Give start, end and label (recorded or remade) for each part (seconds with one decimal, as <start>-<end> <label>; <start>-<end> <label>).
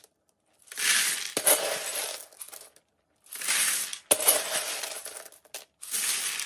0.0-6.5 recorded